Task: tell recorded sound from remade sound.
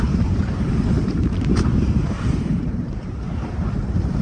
remade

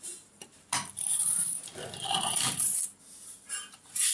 remade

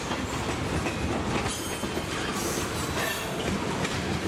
recorded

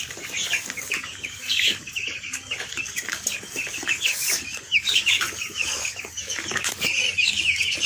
remade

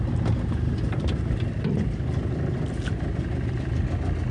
recorded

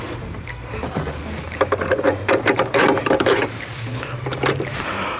remade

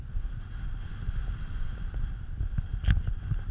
recorded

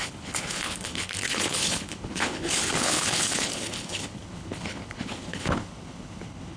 remade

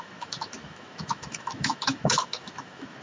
remade